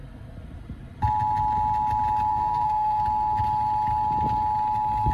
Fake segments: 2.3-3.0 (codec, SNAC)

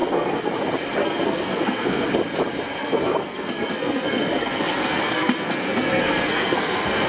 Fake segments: 0.0-0.5 (codec, SNAC); 1.0-2.1; 2.8-7.1

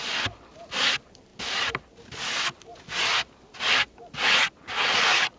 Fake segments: none

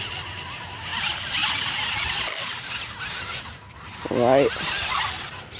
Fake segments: none

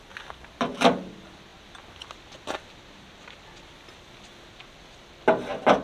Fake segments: none

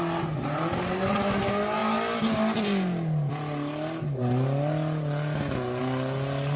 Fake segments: none

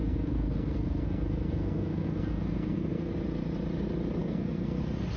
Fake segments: 0.0-3.1 (codec, SNAC); 4.2-4.8